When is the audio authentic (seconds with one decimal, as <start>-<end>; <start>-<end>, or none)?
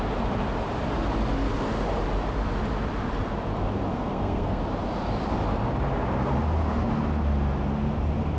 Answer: 0.0-3.9; 4.6-8.4